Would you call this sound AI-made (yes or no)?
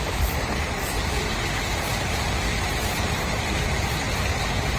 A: no